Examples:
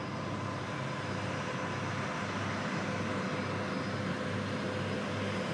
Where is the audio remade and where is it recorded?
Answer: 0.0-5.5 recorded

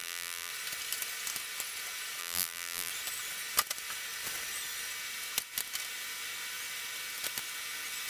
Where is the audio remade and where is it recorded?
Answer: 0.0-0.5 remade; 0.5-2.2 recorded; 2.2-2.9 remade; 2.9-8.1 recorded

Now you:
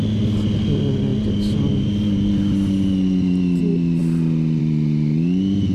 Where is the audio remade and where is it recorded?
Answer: 0.0-5.7 recorded

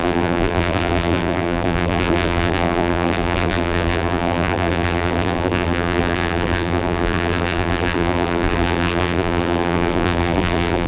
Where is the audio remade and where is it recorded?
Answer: 0.0-10.9 remade